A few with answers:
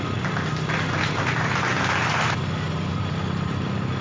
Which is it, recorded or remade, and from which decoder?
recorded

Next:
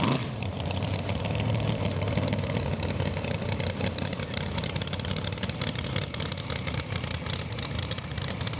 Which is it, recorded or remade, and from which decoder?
remade, vocoder, BigVGAN v2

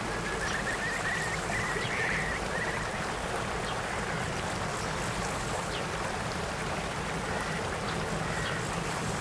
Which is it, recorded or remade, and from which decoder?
recorded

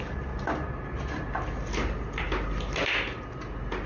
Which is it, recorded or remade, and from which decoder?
recorded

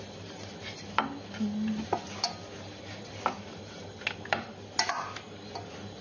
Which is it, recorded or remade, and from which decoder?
recorded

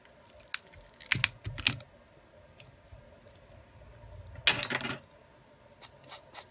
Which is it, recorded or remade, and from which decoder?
recorded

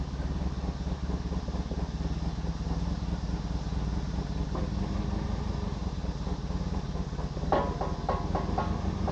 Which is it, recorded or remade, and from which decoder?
recorded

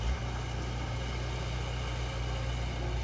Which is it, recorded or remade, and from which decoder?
recorded